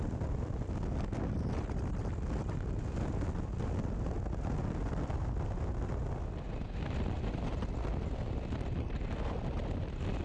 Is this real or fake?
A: real